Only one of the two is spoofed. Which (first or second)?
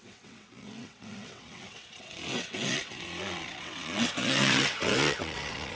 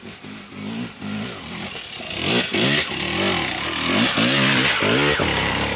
first